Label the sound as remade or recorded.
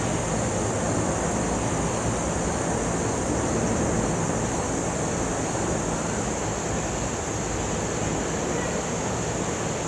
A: recorded